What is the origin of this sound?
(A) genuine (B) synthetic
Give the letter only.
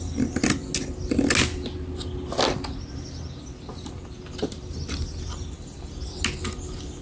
A